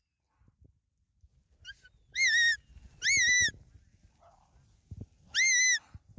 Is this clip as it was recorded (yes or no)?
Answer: yes